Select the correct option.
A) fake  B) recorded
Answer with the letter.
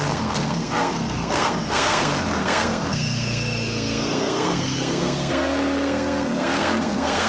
A